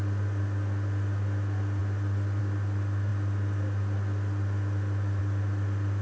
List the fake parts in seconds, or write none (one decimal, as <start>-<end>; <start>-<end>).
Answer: none